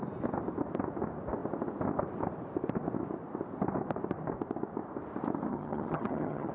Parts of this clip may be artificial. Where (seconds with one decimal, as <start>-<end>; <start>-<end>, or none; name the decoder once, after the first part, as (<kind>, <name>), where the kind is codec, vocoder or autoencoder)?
5.5-6.5 (vocoder, HiFi-GAN)